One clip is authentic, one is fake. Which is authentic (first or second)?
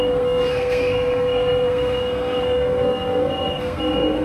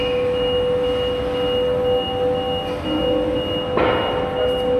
second